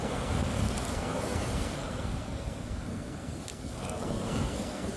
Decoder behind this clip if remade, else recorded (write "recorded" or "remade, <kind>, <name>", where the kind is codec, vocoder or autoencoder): remade, codec, SNAC